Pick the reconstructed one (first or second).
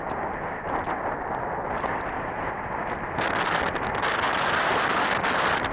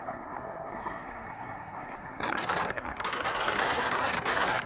second